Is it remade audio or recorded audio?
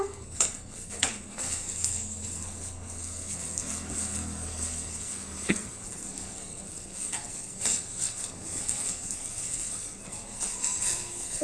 remade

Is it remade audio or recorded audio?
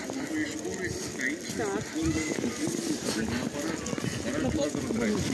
recorded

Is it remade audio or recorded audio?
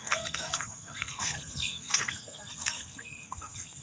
remade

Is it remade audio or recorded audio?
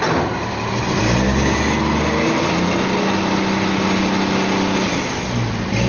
recorded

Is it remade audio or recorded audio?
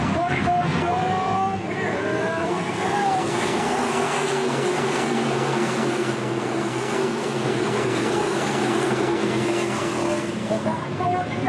remade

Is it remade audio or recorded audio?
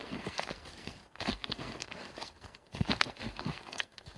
remade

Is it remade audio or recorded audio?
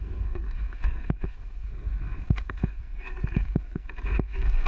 remade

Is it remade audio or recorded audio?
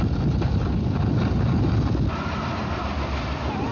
recorded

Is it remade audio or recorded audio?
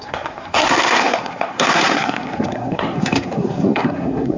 remade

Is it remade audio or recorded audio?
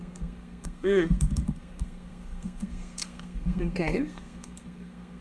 remade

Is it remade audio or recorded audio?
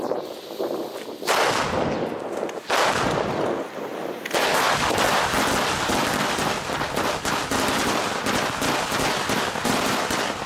recorded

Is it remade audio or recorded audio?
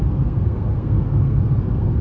remade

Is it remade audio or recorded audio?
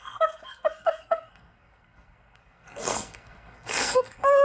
remade